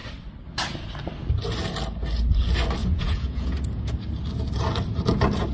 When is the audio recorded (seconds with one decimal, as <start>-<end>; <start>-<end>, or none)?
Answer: 0.0-2.8; 3.9-5.5